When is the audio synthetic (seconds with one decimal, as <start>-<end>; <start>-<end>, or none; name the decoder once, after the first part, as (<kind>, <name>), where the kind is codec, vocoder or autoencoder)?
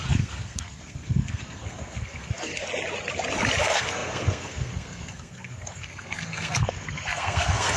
0.0-2.5 (codec, SNAC); 3.6-7.8